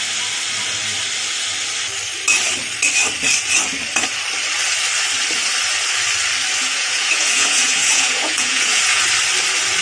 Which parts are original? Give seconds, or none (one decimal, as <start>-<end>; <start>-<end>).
0.0-6.6; 9.0-9.8